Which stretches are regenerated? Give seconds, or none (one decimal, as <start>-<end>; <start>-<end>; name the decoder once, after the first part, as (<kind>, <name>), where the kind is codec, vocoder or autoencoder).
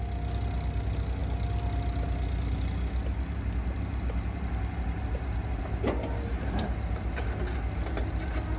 none